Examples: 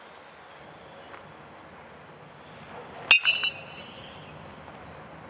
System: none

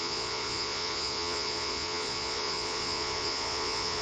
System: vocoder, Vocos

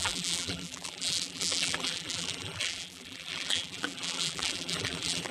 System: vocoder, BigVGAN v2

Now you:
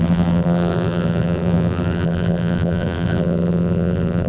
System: vocoder, BigVGAN v2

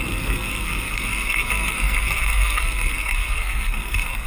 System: codec, SNAC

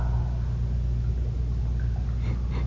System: none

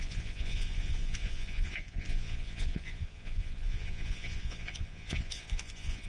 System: vocoder, Vocos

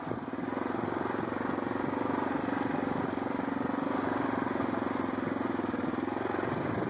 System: none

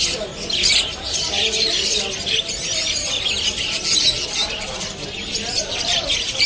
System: none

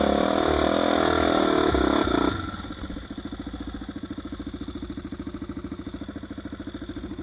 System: none